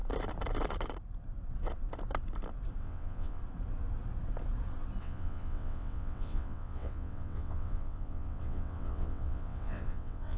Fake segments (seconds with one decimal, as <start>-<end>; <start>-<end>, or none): 2.8-3.4; 5.0-10.4